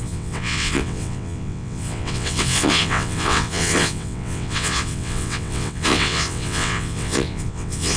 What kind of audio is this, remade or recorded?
remade